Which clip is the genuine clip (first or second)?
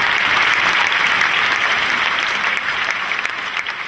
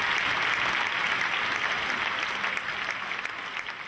second